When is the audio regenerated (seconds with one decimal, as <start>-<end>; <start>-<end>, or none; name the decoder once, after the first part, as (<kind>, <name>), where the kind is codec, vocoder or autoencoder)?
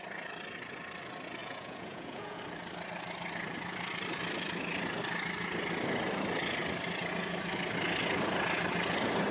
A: 1.4-2.4 (vocoder, Vocos)